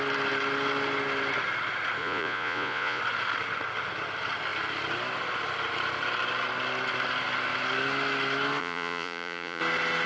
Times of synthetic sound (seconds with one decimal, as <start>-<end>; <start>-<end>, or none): 2.0-3.0; 8.6-9.6